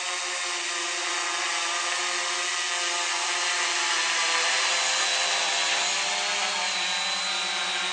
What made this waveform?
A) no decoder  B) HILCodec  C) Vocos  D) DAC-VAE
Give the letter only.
A